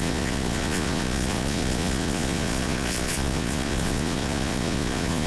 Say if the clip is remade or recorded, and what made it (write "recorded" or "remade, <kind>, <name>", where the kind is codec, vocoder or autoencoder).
remade, vocoder, Vocos